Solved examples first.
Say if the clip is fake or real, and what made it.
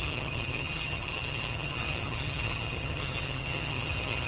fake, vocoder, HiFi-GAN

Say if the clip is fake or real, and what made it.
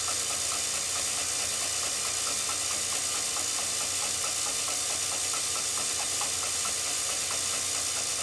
real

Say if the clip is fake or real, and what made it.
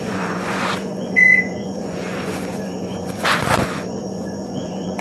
fake, vocoder, Vocos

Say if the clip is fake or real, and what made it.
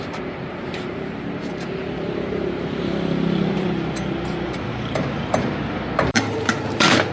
fake, vocoder, BigVGAN v2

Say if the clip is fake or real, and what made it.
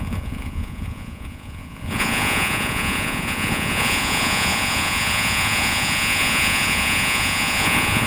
fake, vocoder, Vocos